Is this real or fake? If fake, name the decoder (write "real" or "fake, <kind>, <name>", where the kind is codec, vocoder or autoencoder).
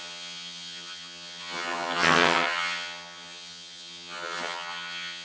fake, vocoder, HiFi-GAN